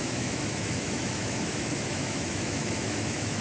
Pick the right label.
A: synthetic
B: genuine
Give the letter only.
A